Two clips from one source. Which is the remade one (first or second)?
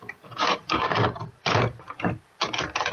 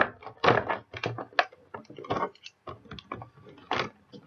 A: first